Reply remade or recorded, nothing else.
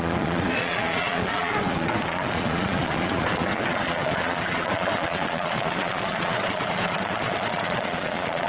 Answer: remade